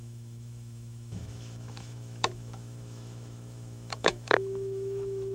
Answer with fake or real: fake